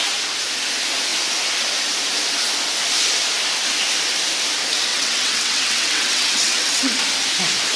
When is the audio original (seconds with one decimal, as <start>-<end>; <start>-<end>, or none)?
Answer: 0.0-4.9; 7.0-7.8